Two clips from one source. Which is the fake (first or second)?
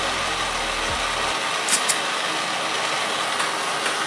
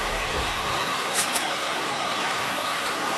second